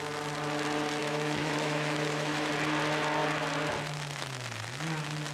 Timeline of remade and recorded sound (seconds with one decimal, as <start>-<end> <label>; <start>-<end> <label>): 0.0-1.0 recorded; 1.0-2.5 remade; 2.5-5.3 recorded